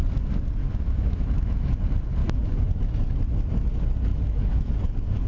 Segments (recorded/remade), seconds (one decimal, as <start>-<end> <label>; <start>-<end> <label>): 0.0-0.6 recorded; 0.6-1.8 remade; 1.8-2.2 recorded; 2.2-2.8 remade; 2.8-4.1 recorded; 4.1-4.7 remade; 4.7-5.3 recorded